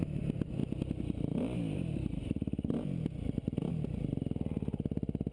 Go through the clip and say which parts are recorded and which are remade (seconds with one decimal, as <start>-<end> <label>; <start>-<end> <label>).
0.0-5.3 recorded